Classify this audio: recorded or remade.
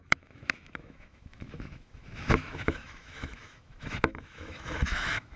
remade